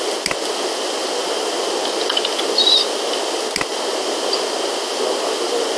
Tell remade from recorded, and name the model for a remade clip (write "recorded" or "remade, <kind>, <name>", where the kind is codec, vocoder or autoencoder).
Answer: recorded